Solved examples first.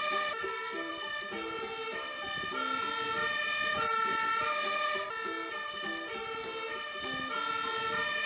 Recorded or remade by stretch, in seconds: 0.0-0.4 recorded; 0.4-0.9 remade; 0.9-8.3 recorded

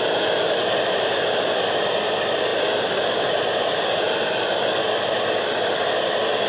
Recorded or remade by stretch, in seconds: 0.0-6.5 recorded

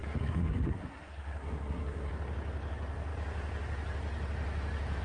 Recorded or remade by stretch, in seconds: 0.0-2.1 remade; 2.1-5.0 recorded

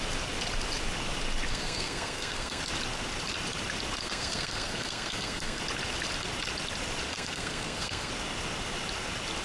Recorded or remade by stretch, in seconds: 0.0-1.5 recorded; 1.5-2.6 remade; 2.6-4.0 recorded; 4.0-5.6 remade; 5.6-7.1 recorded; 7.1-8.1 remade; 8.1-9.4 recorded

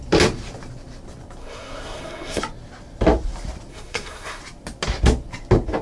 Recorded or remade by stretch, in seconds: 0.0-1.4 recorded; 1.4-2.4 remade; 2.4-3.7 recorded; 3.7-4.4 remade; 4.4-5.8 recorded

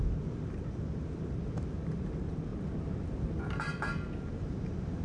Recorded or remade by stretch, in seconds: 0.0-5.0 recorded

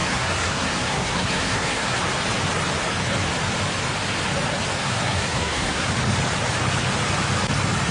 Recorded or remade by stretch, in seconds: 0.0-2.0 remade; 2.0-4.8 recorded; 4.8-5.9 remade; 5.9-7.9 recorded